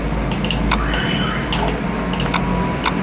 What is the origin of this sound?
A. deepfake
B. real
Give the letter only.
B